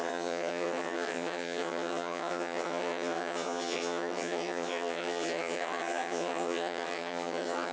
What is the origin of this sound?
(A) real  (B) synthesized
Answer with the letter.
B